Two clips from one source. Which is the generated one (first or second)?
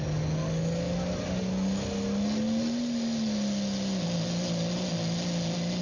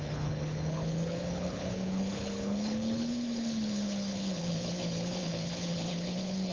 second